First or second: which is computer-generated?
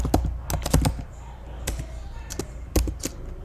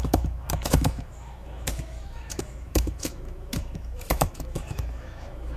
second